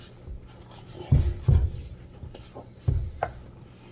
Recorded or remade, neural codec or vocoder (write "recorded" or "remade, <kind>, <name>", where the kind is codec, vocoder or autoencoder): recorded